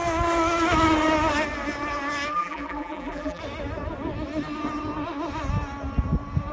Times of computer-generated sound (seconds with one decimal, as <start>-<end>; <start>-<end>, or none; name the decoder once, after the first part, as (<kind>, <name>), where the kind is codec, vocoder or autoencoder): 2.3-3.4 (vocoder, BigVGAN v2)